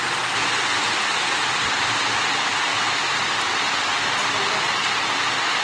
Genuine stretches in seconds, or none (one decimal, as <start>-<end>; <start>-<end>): 0.0-5.6